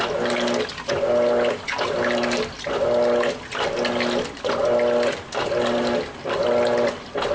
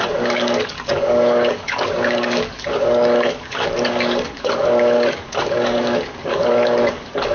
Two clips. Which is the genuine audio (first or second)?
first